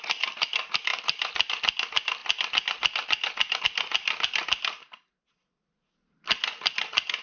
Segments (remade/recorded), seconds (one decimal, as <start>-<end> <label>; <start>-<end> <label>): 0.0-7.2 recorded